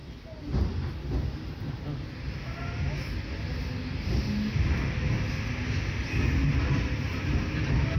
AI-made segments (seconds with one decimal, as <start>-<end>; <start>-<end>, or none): none